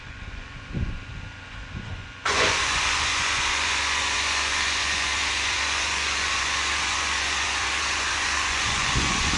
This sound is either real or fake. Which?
fake